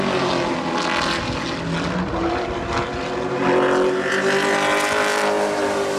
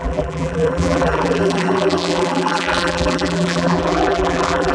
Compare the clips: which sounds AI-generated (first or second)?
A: second